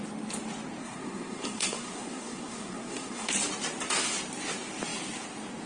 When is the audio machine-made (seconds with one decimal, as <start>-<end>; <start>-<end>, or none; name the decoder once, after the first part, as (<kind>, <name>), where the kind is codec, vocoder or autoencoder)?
0.8-3.3 (codec, SNAC)